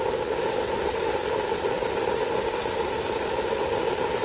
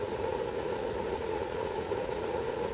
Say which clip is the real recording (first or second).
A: first